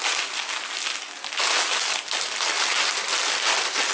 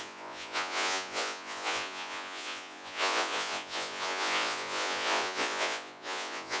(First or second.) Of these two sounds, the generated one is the second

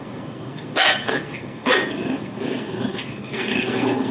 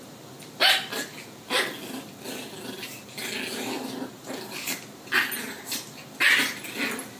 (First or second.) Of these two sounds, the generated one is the first